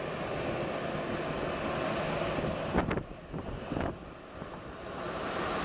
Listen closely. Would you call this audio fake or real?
real